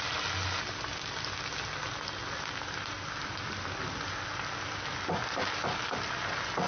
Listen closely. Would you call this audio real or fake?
real